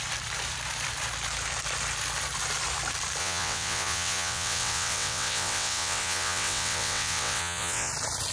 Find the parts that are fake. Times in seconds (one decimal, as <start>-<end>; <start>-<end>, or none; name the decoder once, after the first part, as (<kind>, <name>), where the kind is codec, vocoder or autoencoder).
3.2-7.9 (vocoder, WaveNeXt)